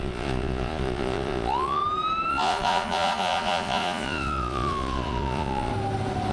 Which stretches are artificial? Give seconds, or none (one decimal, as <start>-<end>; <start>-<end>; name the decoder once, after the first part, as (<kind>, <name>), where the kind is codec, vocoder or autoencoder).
0.0-1.8 (vocoder, Vocos); 2.3-5.7